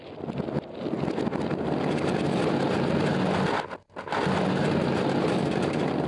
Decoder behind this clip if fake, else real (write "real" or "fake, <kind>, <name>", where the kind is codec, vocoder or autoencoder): real